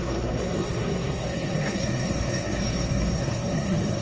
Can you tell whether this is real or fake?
fake